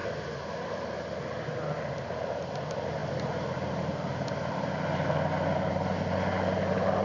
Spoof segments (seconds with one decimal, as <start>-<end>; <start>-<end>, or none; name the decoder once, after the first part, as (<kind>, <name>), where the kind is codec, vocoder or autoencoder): none